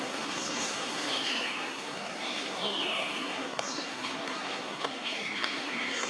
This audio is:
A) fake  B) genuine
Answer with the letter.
A